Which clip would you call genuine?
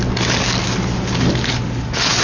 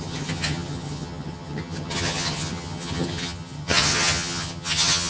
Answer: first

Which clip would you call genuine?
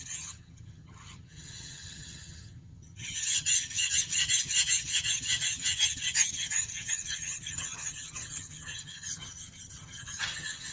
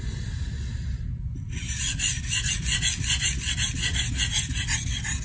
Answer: second